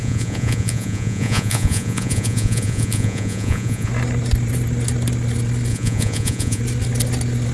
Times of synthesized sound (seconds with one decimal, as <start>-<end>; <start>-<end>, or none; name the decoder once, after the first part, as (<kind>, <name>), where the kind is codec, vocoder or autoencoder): 0.0-3.9 (vocoder, Vocos); 5.7-6.6